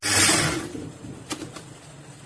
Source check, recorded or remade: recorded